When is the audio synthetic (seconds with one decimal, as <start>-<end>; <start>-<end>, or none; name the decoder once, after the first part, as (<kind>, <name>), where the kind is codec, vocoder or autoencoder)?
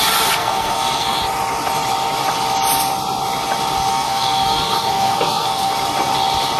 0.4-1.2 (codec, SNAC); 3.9-5.7